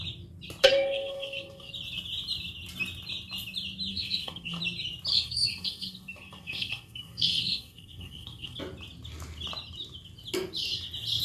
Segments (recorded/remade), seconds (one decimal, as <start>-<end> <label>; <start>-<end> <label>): 0.0-0.7 recorded; 0.7-1.7 remade; 1.7-3.9 recorded; 3.9-4.6 remade; 4.6-5.1 recorded; 5.1-8.6 remade; 8.6-11.2 recorded